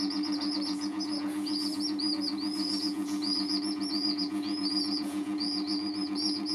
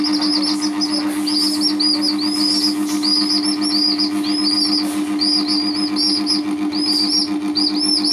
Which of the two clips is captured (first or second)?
second